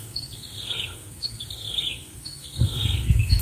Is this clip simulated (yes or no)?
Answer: yes